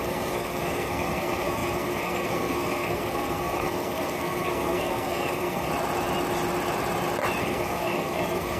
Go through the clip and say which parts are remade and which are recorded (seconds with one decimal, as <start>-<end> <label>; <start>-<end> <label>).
0.0-5.7 remade; 5.7-7.4 recorded; 7.4-8.6 remade